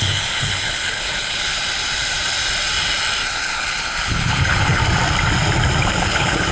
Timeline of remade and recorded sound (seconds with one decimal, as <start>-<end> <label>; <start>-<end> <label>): 0.0-1.6 remade; 1.6-3.3 recorded; 3.3-4.8 remade; 4.8-6.0 recorded; 6.0-6.5 remade